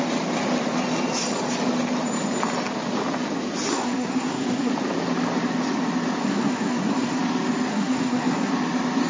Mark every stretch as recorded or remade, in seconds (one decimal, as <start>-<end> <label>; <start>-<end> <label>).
0.0-3.7 recorded; 3.7-4.7 remade; 4.7-6.2 recorded; 6.2-7.2 remade; 7.2-7.7 recorded; 7.7-8.5 remade; 8.5-9.1 recorded